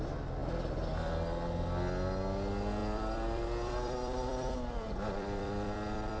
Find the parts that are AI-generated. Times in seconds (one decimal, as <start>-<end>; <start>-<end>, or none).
2.8-6.2